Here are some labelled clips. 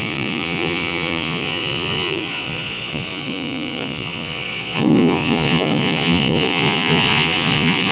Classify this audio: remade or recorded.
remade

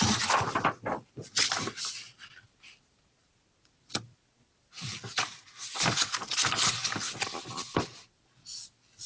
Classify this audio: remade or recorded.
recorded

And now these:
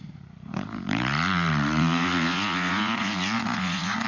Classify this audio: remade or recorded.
remade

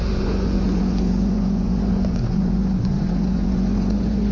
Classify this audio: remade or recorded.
remade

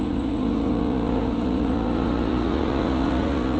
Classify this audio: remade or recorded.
remade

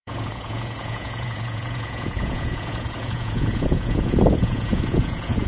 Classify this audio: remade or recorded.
remade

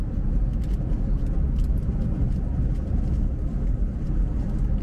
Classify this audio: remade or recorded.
recorded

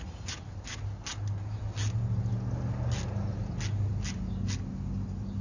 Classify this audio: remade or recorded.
recorded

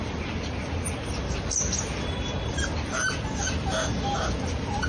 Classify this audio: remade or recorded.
recorded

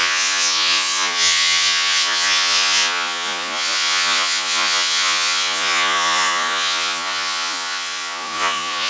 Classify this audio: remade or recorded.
remade